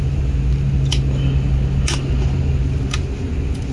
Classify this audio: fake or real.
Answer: real